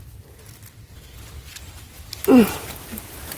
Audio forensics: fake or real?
real